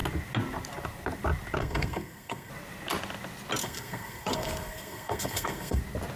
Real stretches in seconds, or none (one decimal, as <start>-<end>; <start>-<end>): 0.0-1.6; 2.5-3.6; 5.8-6.2